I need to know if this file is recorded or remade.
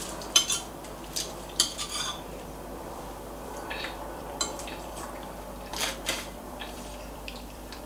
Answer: remade